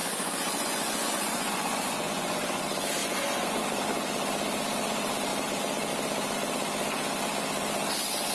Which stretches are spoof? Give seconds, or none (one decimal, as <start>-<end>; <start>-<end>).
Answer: 0.0-2.6; 3.0-3.6